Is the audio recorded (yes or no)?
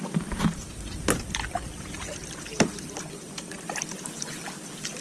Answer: yes